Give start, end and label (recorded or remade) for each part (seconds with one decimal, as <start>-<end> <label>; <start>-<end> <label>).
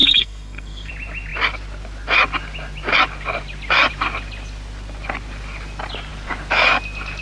0.0-0.9 remade; 0.9-7.2 recorded